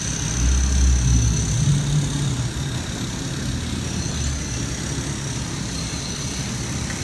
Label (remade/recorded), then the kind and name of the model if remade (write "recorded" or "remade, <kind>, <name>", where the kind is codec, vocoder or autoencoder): recorded